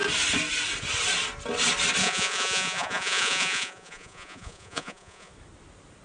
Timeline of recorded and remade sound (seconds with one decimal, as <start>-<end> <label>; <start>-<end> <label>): 0.0-2.0 recorded; 2.0-5.3 remade; 5.3-6.0 recorded